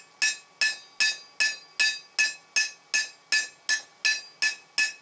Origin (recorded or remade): recorded